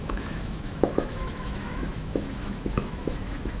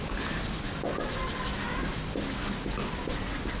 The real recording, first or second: second